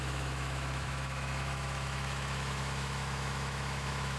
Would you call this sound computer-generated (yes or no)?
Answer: yes